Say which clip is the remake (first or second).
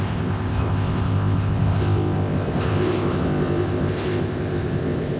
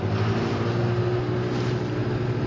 first